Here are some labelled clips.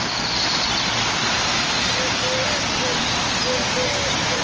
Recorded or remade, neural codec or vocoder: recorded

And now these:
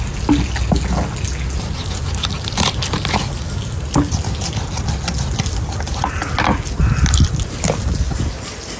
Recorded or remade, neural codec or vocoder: recorded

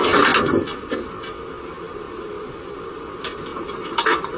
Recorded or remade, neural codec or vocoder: recorded